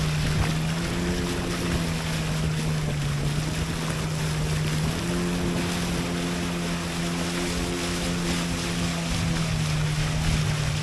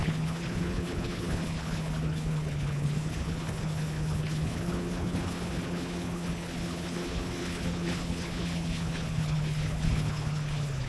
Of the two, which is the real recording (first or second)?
first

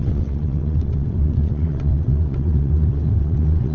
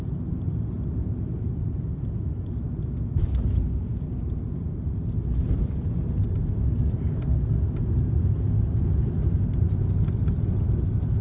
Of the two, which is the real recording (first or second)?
second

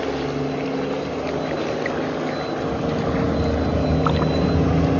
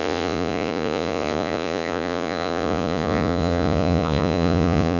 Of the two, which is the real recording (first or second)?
first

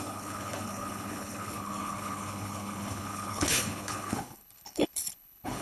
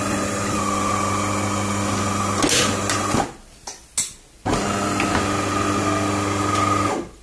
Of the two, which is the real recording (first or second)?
second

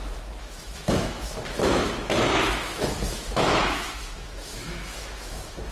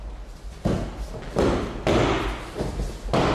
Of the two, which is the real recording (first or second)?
second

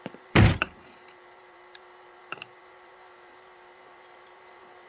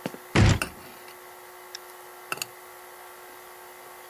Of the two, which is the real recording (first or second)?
second